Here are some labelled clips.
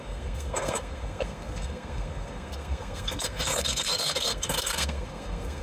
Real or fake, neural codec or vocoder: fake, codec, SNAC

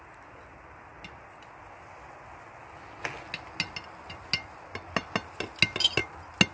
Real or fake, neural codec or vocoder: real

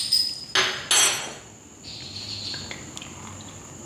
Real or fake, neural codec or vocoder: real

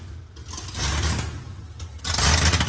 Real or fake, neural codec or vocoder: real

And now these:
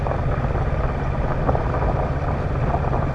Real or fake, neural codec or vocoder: real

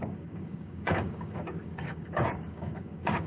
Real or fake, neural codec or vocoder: fake, codec, DAC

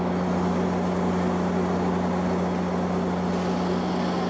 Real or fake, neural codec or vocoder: real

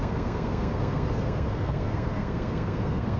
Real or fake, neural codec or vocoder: fake, codec, SNAC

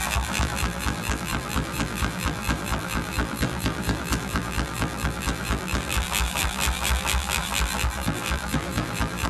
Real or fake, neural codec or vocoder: fake, vocoder, BigVGAN v2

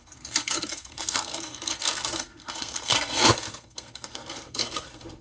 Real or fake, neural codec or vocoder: fake, codec, SNAC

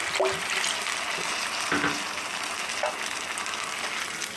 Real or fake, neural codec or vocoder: real